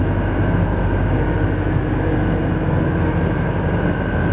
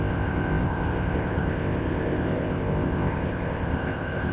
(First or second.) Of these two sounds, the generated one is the second